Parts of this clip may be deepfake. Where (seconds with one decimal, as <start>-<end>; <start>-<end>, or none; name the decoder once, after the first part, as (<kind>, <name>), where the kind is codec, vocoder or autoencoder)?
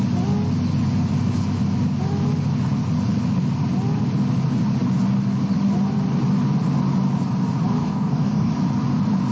7.8-8.5 (codec, DAC)